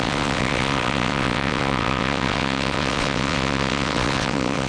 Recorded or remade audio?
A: remade